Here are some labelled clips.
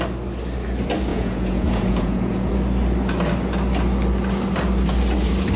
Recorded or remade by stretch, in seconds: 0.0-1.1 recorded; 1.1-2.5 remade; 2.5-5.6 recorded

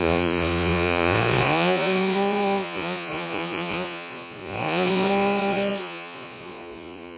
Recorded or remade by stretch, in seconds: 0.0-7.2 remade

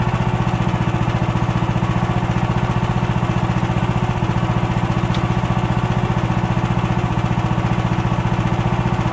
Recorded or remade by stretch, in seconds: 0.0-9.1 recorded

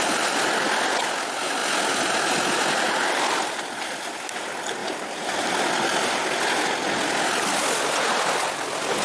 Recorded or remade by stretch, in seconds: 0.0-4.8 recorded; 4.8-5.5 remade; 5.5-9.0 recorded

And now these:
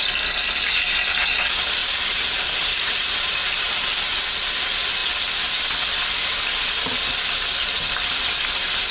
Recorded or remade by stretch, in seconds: 0.0-1.8 recorded; 1.8-4.0 remade; 4.0-8.9 recorded